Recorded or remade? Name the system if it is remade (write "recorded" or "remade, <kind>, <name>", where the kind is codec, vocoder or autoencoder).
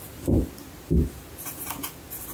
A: recorded